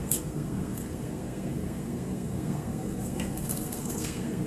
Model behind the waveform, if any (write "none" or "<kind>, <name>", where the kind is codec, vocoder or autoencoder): codec, SNAC